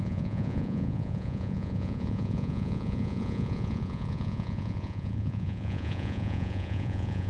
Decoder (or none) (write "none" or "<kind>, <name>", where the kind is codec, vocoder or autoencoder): vocoder, Vocos